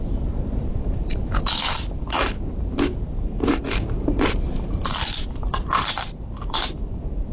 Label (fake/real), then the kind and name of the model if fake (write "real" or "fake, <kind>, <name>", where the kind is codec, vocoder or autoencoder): fake, vocoder, BigVGAN v2